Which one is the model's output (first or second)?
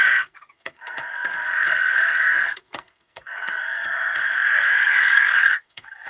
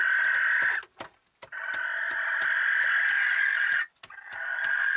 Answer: first